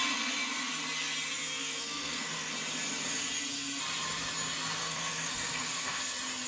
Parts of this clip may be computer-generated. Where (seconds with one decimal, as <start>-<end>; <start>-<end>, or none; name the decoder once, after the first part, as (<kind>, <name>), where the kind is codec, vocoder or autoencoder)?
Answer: 1.6-2.5 (codec, SNAC); 4.8-6.0

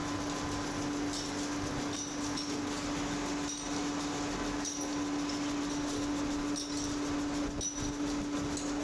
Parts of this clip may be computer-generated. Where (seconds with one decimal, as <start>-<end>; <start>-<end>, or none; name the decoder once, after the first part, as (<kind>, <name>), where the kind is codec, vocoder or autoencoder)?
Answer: none